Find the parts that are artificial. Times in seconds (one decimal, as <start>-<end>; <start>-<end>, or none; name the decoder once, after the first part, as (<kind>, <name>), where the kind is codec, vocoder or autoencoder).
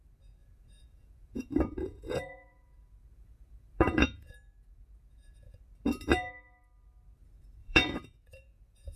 0.4-5.6 (vocoder, Vocos); 7.6-9.0